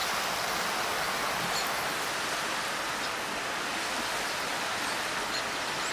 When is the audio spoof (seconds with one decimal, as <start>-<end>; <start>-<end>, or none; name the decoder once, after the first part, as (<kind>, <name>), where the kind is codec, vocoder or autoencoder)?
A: none